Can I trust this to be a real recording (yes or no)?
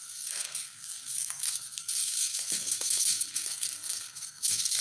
no